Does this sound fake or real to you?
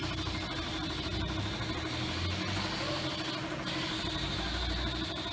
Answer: real